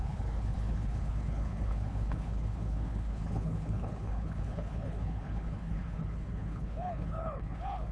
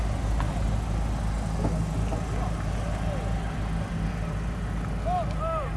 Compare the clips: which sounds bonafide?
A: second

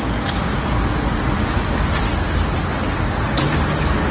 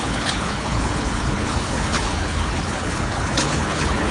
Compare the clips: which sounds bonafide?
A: first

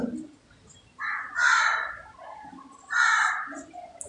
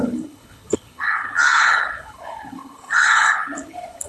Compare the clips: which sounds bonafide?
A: first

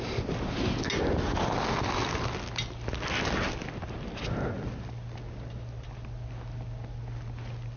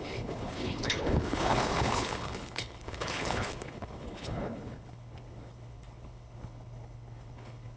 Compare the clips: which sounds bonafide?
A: first